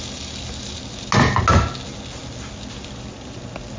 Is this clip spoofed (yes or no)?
no